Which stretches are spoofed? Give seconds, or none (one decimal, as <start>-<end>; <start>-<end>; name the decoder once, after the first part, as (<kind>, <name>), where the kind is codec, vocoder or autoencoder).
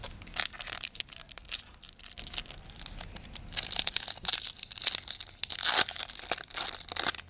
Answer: none